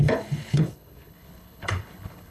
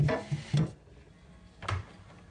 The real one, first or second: second